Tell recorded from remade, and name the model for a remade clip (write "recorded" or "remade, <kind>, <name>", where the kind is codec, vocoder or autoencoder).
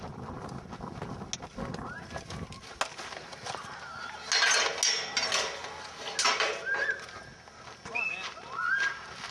recorded